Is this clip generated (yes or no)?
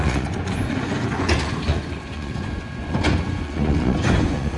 yes